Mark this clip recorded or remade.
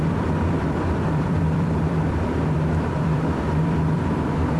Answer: remade